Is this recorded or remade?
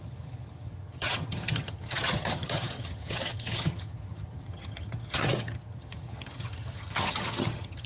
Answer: remade